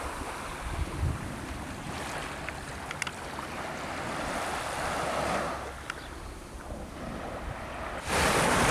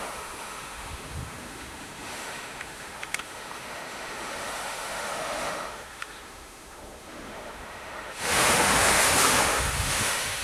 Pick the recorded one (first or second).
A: first